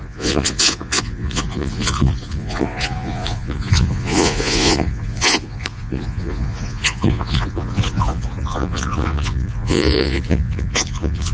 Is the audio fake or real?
fake